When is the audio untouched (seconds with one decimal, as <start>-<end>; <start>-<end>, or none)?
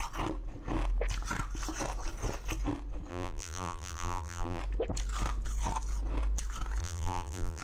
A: 0.0-3.1; 4.6-6.8